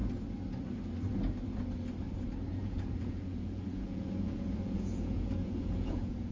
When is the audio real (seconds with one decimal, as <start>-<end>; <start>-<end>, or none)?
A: 0.0-2.5

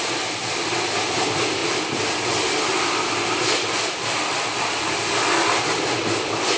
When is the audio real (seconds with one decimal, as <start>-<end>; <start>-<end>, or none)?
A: 0.0-6.6

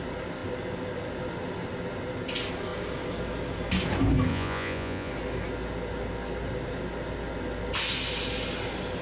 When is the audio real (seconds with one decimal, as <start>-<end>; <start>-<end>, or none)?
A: 0.0-4.3; 5.1-9.0

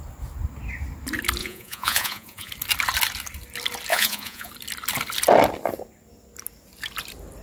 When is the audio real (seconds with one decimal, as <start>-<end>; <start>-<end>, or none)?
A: 0.0-1.4; 2.5-3.9; 4.5-7.4

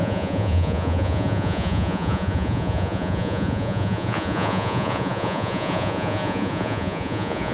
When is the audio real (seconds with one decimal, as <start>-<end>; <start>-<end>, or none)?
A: none

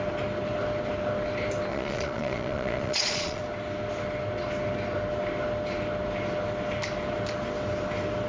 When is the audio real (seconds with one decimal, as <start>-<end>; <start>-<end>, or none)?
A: 0.0-1.7; 3.4-8.3

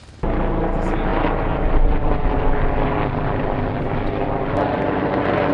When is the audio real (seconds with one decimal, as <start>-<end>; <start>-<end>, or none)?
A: 0.0-5.5

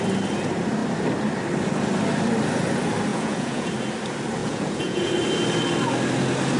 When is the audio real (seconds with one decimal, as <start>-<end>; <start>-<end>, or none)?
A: 0.0-3.1; 3.7-4.4; 5.1-6.6